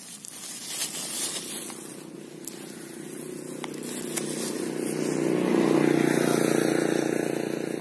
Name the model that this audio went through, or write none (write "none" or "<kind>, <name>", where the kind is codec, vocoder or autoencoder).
none